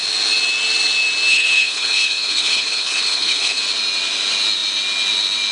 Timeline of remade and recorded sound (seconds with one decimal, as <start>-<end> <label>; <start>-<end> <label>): 0.0-1.3 recorded; 1.3-3.6 remade; 3.6-5.5 recorded